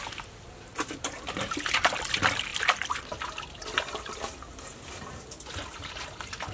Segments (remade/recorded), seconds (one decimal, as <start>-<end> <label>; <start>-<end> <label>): 0.0-6.5 recorded